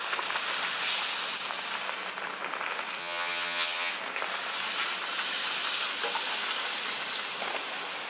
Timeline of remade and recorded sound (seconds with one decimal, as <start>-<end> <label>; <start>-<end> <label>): 0.0-3.0 recorded; 3.0-3.9 remade; 3.9-8.1 recorded